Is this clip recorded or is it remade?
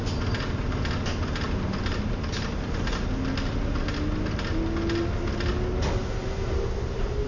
recorded